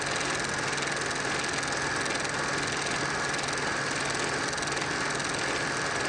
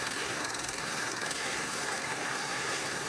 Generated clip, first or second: second